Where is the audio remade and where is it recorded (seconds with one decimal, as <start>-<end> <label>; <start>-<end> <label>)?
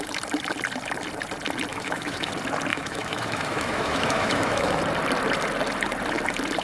0.0-1.7 recorded; 1.7-2.3 remade; 2.3-2.7 recorded; 2.7-4.8 remade; 4.8-6.6 recorded